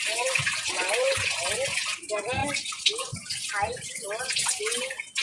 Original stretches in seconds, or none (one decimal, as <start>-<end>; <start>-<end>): 0.0-5.2